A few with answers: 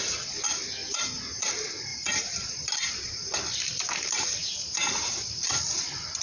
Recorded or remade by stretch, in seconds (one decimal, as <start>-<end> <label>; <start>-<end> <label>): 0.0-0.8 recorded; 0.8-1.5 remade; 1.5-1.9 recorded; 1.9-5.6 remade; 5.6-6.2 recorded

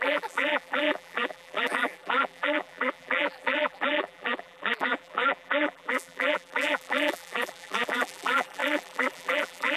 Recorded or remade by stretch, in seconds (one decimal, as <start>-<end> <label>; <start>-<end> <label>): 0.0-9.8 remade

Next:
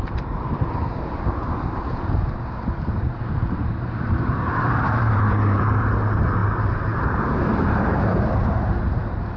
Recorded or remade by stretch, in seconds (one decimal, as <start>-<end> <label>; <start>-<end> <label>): 0.0-9.4 remade

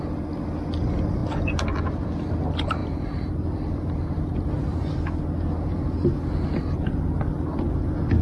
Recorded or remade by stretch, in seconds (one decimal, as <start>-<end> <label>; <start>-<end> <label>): 0.0-2.8 recorded; 2.8-4.9 remade; 4.9-8.2 recorded

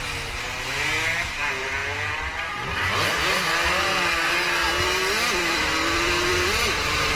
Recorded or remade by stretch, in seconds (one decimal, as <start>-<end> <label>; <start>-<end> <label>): 0.0-6.3 recorded; 6.3-7.2 remade

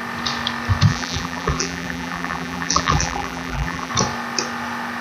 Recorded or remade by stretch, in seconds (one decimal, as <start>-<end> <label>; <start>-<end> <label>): 0.0-0.9 recorded; 0.9-3.9 remade; 3.9-5.0 recorded